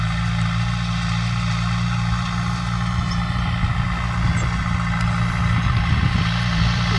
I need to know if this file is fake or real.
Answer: real